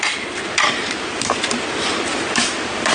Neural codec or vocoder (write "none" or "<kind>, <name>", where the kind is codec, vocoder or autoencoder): vocoder, BigVGAN v2